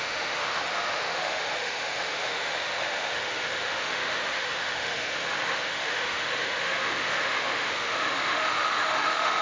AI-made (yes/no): yes